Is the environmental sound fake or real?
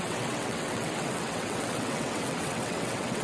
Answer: fake